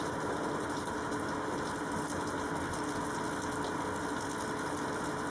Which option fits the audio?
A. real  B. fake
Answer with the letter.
A